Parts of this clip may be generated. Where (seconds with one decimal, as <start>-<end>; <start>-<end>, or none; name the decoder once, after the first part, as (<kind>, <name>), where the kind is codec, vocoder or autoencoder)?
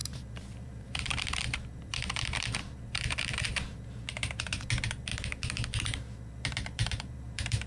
0.0-4.6 (vocoder, BigVGAN v2); 5.1-7.7